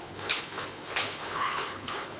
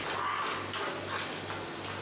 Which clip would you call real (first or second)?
second